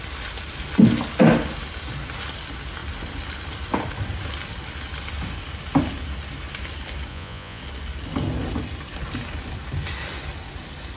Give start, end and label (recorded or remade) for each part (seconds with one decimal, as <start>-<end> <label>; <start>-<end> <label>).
0.0-7.1 recorded; 7.1-7.6 remade; 7.6-11.0 recorded